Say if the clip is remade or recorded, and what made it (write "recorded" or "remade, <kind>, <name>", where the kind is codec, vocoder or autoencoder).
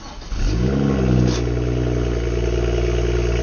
recorded